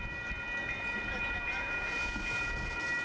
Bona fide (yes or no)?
yes